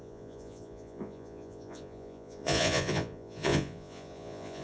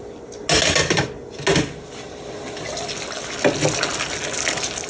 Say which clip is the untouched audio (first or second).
second